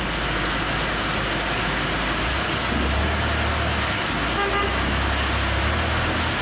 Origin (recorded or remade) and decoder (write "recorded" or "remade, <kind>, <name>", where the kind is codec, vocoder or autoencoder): recorded